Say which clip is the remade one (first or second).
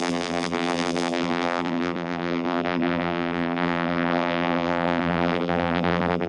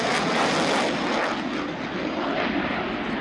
first